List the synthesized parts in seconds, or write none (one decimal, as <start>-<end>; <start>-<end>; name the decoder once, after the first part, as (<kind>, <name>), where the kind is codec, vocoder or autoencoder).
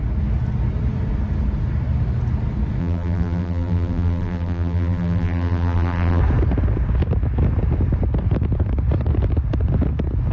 2.8-6.2 (vocoder, BigVGAN v2)